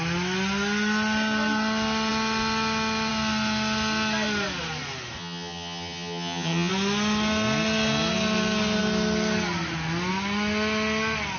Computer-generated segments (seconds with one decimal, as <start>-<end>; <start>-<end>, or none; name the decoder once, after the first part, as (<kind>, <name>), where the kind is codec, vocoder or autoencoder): 5.2-6.7 (vocoder, HiFi-GAN)